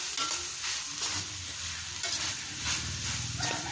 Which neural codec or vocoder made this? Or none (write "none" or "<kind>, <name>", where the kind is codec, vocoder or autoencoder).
none